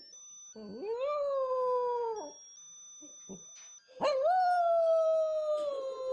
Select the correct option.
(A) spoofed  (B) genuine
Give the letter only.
B